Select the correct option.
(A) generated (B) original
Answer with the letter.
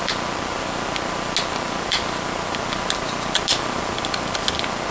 B